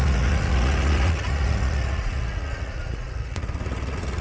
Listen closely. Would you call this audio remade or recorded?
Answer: remade